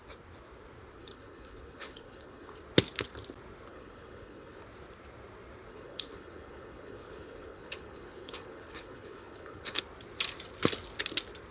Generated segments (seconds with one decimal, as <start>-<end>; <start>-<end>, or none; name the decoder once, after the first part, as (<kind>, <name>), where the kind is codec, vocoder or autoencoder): 1.0-2.6 (codec, HILCodec); 3.7-4.6; 5.7-9.8